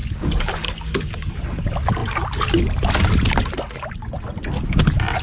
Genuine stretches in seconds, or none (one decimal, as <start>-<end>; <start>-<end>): 1.3-5.2

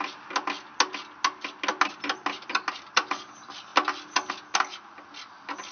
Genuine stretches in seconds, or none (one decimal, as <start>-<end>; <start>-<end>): 0.0-5.7

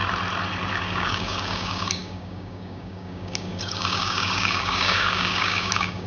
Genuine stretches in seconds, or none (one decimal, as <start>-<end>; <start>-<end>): 0.0-0.7

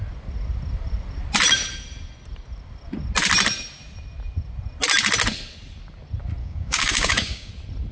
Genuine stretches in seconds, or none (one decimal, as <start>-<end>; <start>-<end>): 0.0-6.4; 7.5-7.9

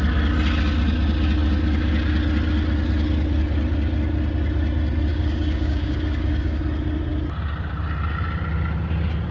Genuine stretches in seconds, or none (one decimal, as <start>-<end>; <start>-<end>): 0.0-5.1; 6.6-9.3

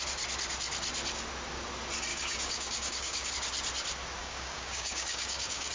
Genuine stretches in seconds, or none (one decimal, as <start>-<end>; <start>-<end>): 0.0-2.1; 3.3-4.2

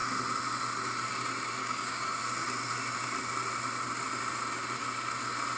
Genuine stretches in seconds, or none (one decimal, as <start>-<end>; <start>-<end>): 0.0-1.6; 2.2-5.6